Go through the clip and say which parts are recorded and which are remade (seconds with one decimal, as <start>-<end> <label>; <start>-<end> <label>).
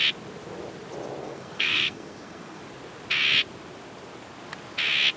0.0-1.2 recorded; 1.2-2.6 remade; 2.6-5.2 recorded